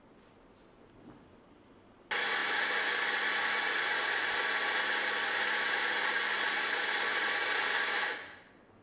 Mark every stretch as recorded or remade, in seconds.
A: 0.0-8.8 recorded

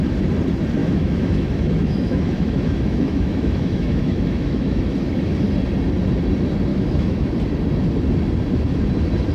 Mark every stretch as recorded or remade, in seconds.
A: 0.0-0.8 recorded; 0.8-4.8 remade; 4.8-6.7 recorded; 6.7-7.3 remade; 7.3-9.3 recorded

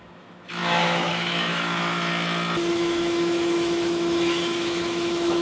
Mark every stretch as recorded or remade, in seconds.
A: 0.0-2.1 remade; 2.1-2.7 recorded; 2.7-5.4 remade

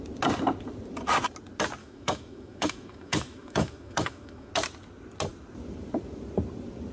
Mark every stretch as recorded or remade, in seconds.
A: 0.0-1.8 recorded; 1.8-4.5 remade; 4.5-6.9 recorded

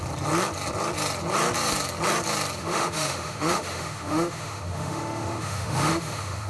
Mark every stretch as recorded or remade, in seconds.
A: 0.0-2.6 recorded; 2.6-6.5 remade

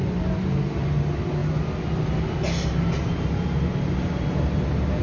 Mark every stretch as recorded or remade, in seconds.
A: 0.0-5.0 recorded